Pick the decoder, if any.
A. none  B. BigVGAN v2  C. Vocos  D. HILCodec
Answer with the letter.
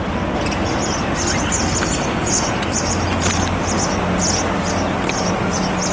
A